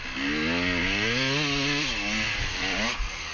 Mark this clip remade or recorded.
recorded